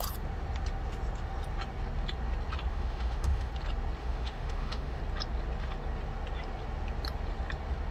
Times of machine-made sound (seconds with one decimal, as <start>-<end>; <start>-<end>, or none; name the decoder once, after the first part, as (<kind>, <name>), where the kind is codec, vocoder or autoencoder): 2.7-3.5 (autoencoder, DAC-VAE); 4.0-5.0